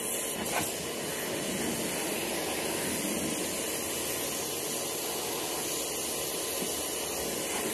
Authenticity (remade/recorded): recorded